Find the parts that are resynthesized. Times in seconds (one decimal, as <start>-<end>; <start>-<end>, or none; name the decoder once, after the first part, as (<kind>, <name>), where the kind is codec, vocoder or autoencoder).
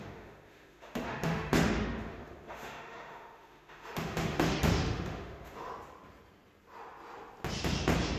0.0-5.7 (autoencoder, DAC-VAE)